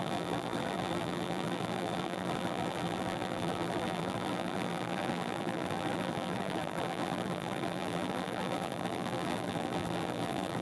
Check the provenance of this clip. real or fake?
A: fake